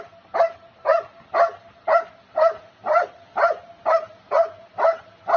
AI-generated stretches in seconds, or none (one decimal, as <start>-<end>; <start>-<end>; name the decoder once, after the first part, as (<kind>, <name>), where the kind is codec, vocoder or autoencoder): none